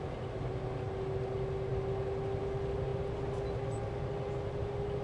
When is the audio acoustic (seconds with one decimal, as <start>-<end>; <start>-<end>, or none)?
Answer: 0.0-5.0